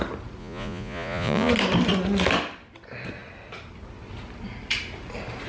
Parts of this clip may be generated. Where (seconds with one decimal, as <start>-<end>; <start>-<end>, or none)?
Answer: 0.4-1.5